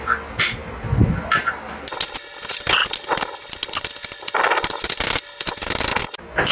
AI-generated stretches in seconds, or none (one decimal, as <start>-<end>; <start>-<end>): none